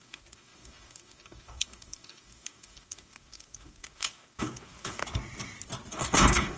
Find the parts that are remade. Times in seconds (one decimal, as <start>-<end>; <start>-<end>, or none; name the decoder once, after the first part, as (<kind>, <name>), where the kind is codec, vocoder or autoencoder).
0.0-5.0 (codec, DAC); 5.9-6.6